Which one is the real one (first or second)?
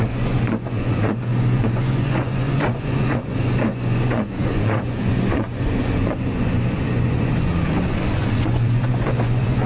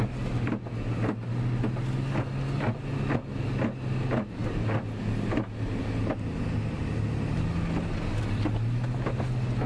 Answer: second